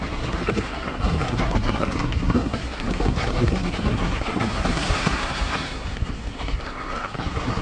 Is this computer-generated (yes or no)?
yes